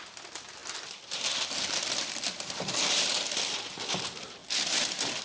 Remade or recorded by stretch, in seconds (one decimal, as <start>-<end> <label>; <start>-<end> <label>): 0.0-0.6 recorded; 0.6-3.7 remade; 3.7-4.4 recorded; 4.4-5.2 remade